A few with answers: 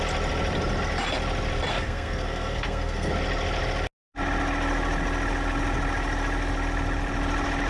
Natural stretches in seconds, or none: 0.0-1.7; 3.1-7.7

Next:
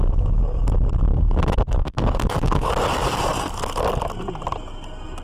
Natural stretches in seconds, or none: 0.0-1.1; 2.7-5.2

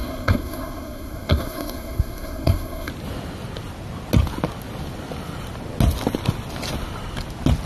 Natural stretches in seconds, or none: 2.9-7.7

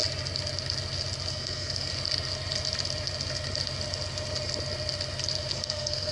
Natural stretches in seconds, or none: 0.0-1.3; 1.9-5.5

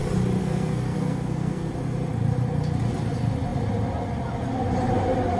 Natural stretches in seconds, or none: 0.0-0.4; 1.7-5.4

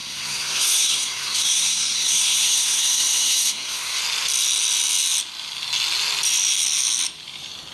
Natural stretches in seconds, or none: 4.0-7.7

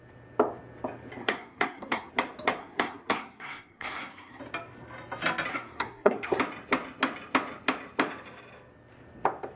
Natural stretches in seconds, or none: 0.0-1.2; 2.1-2.6; 4.4-5.5; 6.4-9.6